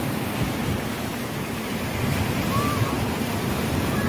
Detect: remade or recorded recorded